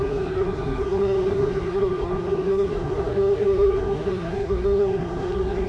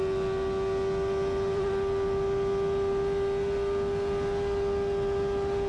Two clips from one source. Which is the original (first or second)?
second